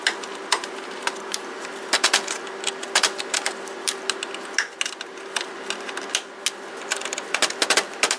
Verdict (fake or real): real